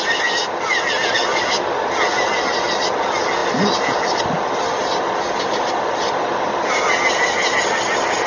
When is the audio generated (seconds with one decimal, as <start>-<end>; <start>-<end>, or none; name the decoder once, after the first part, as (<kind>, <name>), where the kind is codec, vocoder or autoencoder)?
none